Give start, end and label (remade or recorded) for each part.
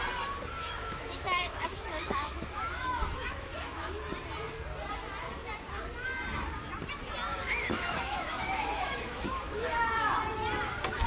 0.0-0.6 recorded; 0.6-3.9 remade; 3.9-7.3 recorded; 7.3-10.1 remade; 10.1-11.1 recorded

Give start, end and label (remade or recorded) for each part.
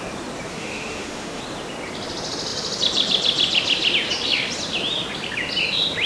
0.0-0.5 recorded; 0.5-1.4 remade; 1.4-6.1 recorded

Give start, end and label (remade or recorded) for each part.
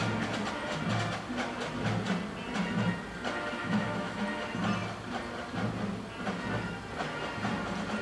0.0-3.6 recorded; 3.6-4.2 remade; 4.2-8.0 recorded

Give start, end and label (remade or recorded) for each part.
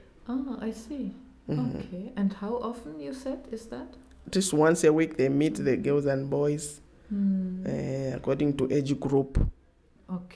0.0-2.3 recorded; 2.3-4.5 remade; 4.5-10.4 recorded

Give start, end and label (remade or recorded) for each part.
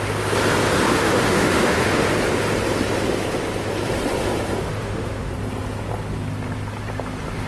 0.0-0.9 recorded; 0.9-2.1 remade; 2.1-4.6 recorded; 4.6-5.3 remade; 5.3-7.5 recorded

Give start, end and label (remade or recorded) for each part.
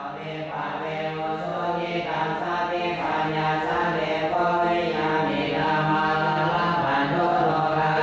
0.0-5.5 recorded; 5.5-6.5 remade; 6.5-8.0 recorded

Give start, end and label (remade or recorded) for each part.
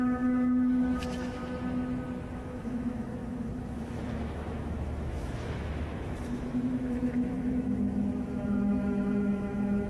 0.0-1.4 remade; 1.4-2.3 recorded; 2.3-9.9 remade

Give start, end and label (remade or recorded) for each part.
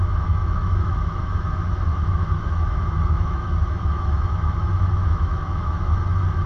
0.0-6.5 remade